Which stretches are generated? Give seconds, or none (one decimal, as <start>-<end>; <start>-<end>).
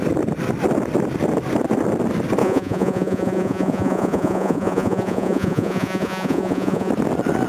2.4-6.9